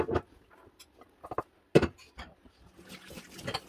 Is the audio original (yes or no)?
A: yes